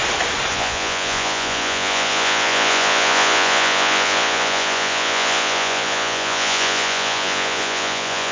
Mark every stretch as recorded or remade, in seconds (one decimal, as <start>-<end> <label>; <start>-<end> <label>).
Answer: 0.0-0.5 recorded; 0.5-8.3 remade